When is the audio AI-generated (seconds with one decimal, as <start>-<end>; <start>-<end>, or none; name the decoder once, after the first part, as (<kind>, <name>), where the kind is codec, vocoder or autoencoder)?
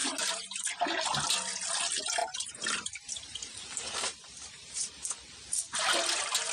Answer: 0.0-0.7 (vocoder, BigVGAN v2); 2.2-5.1